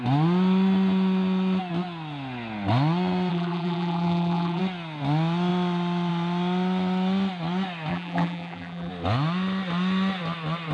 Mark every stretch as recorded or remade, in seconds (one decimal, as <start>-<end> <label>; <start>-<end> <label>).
0.0-3.3 recorded; 3.3-4.6 remade; 4.6-7.9 recorded; 7.9-8.9 remade; 8.9-10.7 recorded